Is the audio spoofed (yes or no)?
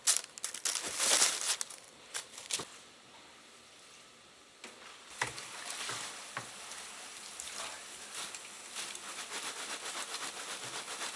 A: no